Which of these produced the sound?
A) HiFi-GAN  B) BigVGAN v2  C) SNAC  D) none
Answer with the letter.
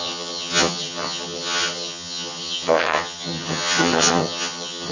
A